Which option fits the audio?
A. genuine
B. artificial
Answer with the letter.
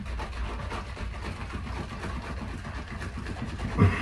A